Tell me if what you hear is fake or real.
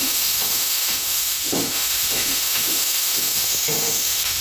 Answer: fake